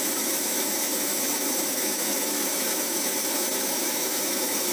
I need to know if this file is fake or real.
fake